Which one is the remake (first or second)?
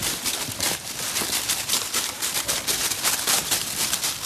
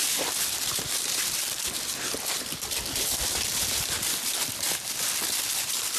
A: first